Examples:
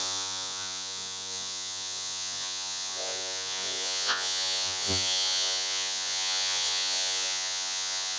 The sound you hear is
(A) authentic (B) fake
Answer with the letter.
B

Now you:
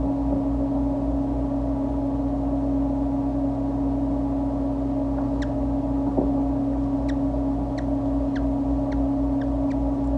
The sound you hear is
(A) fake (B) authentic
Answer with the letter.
B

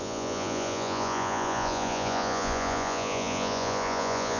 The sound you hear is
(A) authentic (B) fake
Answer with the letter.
B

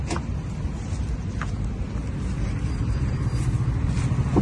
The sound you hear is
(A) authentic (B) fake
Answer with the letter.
A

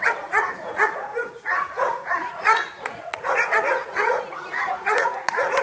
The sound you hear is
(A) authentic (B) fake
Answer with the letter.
B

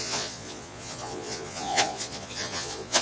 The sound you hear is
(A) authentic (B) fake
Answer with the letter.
B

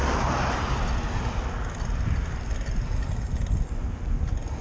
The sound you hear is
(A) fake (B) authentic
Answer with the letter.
B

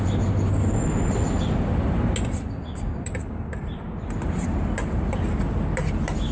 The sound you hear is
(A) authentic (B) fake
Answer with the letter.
A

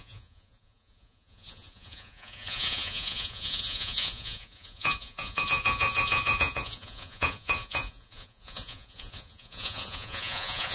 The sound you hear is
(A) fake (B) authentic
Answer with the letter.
A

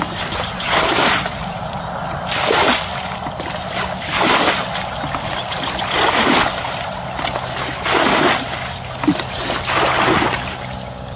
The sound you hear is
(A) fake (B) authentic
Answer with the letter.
B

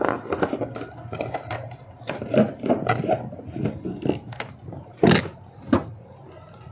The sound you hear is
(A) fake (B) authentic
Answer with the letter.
B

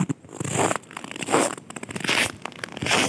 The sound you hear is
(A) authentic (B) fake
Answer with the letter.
A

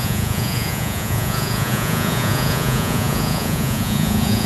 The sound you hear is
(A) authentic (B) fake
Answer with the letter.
B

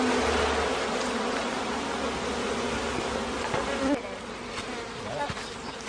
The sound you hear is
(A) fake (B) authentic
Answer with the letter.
B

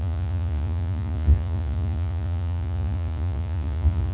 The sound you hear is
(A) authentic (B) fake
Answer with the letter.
B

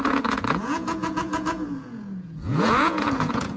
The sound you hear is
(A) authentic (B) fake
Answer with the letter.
B